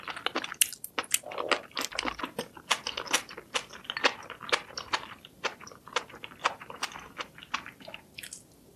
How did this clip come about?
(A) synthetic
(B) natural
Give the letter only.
B